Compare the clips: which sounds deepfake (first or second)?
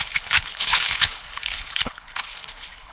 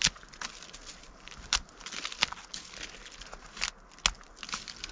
first